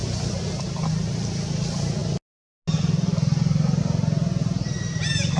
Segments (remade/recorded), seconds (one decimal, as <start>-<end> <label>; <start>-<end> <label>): 0.0-0.9 remade; 0.9-5.4 recorded